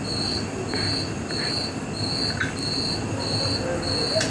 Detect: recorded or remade recorded